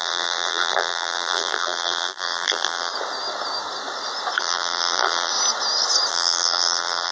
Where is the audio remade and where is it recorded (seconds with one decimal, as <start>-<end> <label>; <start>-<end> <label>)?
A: 0.0-2.9 remade; 2.9-4.4 recorded; 4.4-5.3 remade; 5.3-6.1 recorded; 6.1-7.1 remade